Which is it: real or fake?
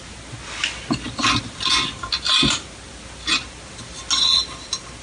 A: real